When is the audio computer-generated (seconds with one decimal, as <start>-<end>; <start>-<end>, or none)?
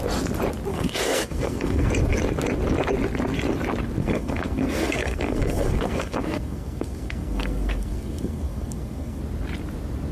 0.7-1.9; 4.0-9.2